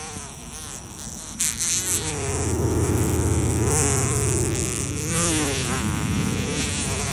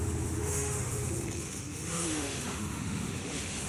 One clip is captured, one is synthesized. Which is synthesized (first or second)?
second